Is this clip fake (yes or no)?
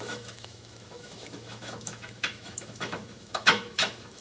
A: yes